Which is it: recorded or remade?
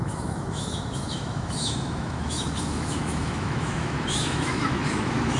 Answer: remade